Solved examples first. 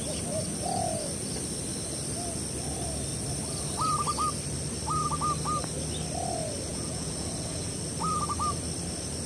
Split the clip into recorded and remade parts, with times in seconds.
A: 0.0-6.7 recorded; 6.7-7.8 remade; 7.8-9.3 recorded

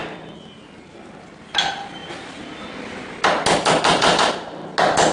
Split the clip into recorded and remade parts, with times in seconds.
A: 0.0-5.1 recorded